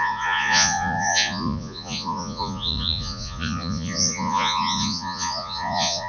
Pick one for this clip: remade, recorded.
remade